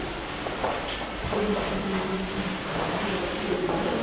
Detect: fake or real fake